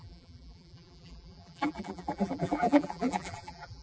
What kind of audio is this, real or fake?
fake